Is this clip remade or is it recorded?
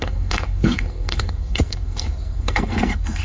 remade